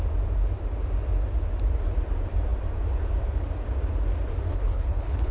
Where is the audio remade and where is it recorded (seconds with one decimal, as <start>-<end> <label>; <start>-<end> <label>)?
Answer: 0.0-4.5 recorded; 4.5-5.3 remade